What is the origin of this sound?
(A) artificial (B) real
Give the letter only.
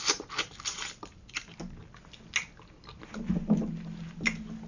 B